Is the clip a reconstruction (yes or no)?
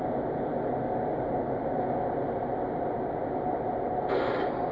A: no